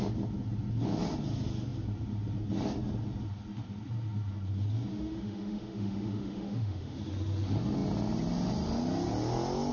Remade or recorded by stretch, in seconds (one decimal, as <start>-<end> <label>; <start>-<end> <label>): 0.0-4.9 recorded; 4.9-7.0 remade; 7.0-9.7 recorded